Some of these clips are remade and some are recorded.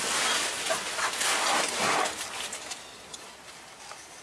recorded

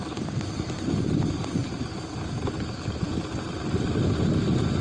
recorded